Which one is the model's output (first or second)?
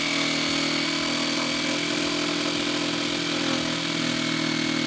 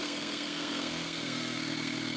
second